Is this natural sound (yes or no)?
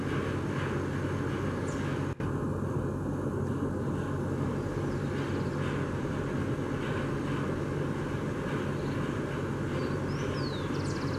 yes